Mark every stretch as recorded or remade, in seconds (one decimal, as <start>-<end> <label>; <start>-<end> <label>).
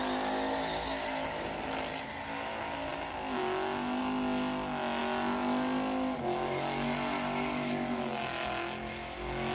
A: 0.0-9.5 recorded